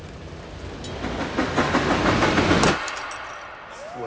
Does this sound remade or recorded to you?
recorded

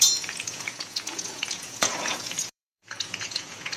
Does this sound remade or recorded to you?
remade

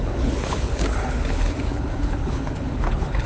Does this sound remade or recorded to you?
remade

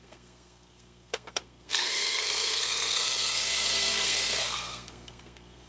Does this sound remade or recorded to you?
remade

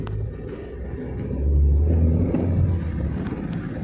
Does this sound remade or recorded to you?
recorded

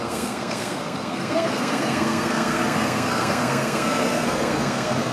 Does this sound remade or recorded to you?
remade